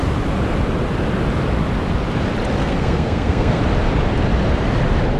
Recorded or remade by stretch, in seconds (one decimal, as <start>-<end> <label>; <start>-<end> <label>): 0.0-2.6 recorded; 2.6-3.6 remade; 3.6-5.2 recorded